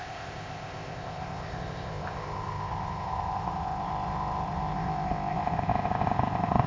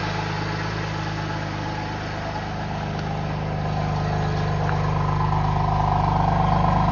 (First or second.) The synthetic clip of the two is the first